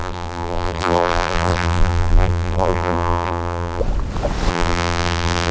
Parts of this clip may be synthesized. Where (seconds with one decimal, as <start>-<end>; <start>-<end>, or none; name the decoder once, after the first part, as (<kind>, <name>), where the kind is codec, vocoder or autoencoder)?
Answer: 0.0-3.8 (vocoder, BigVGAN v2); 4.5-5.5